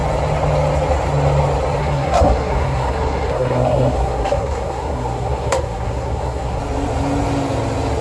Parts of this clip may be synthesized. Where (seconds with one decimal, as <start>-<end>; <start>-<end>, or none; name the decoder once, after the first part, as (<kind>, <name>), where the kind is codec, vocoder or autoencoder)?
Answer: 1.8-6.6 (codec, SNAC)